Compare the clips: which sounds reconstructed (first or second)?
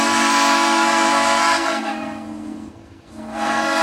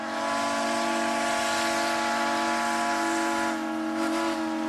first